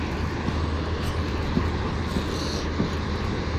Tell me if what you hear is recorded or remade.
recorded